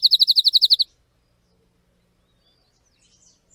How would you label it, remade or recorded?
recorded